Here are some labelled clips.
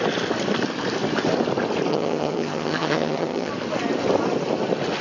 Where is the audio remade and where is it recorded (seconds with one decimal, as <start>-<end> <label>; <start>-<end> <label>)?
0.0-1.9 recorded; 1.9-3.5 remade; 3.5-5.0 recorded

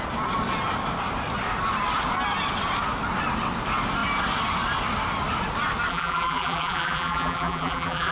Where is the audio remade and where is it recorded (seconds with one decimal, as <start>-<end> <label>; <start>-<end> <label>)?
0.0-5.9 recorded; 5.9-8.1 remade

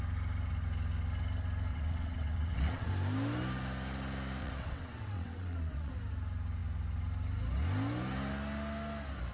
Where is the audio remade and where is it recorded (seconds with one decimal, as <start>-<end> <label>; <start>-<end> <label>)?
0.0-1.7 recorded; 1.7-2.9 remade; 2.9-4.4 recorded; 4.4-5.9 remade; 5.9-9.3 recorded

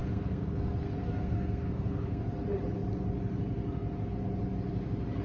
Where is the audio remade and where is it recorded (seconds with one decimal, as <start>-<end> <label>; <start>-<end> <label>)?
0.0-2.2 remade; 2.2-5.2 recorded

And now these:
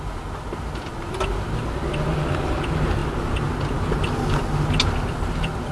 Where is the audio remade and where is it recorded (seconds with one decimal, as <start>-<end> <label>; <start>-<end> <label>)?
0.0-5.7 recorded

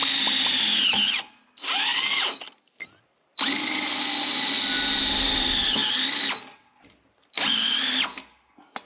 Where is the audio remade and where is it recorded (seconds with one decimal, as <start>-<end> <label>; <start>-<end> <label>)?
0.0-8.9 recorded